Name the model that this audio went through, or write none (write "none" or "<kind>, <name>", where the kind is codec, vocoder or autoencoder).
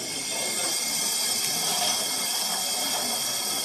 none